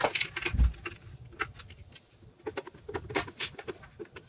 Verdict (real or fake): real